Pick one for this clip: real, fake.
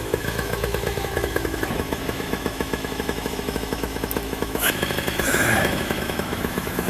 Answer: fake